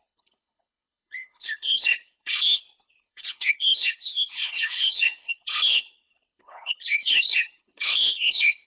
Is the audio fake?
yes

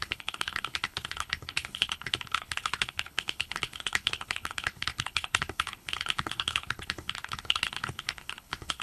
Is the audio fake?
yes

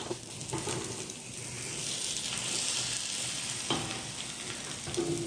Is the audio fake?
no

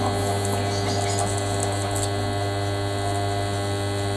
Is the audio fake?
no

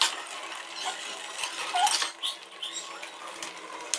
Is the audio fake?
no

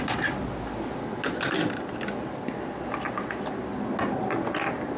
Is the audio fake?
no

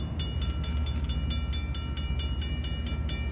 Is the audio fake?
no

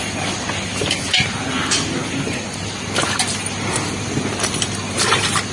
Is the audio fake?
no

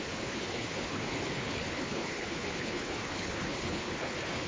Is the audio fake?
yes